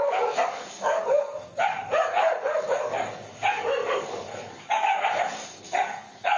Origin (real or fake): fake